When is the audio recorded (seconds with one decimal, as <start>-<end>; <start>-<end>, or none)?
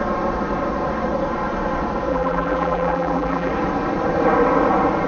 0.0-2.1; 3.5-5.1